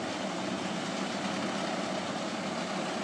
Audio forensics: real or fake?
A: real